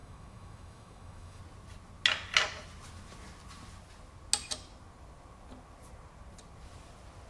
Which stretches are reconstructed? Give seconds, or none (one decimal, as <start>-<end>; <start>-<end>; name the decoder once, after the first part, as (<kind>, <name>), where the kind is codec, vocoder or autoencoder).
0.0-1.4 (autoencoder, DAC-VAE)